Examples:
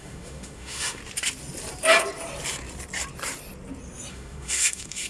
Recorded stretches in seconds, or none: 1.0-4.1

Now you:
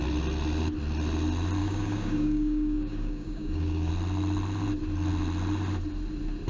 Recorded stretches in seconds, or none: 0.0-1.6; 3.9-6.5

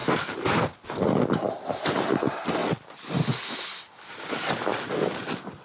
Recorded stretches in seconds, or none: 0.8-5.6

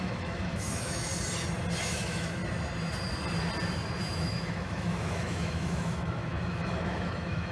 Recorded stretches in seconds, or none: 1.1-1.8; 2.4-4.0